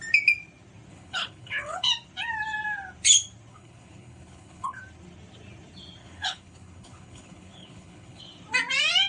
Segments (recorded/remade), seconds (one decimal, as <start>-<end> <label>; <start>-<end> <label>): 0.0-0.9 recorded; 0.9-1.9 remade; 1.9-3.5 recorded; 3.5-4.8 remade; 4.8-6.0 recorded; 6.0-8.2 remade; 8.2-9.1 recorded